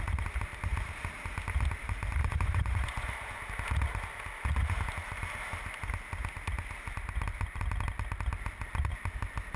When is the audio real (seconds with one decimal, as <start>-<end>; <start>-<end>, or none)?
0.0-2.2; 3.4-9.6